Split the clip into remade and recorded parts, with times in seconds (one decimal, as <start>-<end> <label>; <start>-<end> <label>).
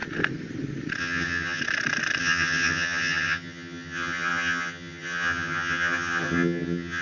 0.0-1.0 recorded; 1.0-1.6 remade; 1.6-2.2 recorded; 2.2-7.0 remade